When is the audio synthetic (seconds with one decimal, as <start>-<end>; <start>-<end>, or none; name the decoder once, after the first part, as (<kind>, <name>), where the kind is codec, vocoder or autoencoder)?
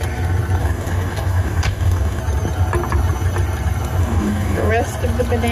0.6-2.2 (codec, DAC); 4.0-4.7